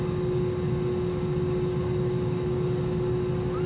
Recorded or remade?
recorded